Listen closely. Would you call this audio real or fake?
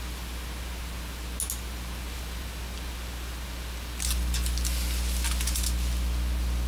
real